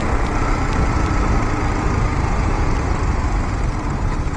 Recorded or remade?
recorded